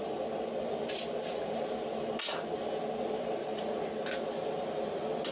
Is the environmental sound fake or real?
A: real